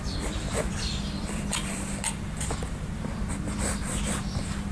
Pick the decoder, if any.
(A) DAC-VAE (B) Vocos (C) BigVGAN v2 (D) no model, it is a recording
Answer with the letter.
C